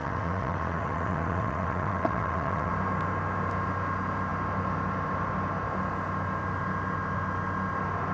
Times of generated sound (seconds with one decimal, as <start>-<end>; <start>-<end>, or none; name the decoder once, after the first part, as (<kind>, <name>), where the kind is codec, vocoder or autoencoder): 0.0-2.7 (vocoder, WaveNeXt)